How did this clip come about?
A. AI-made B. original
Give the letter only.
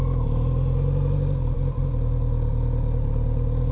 B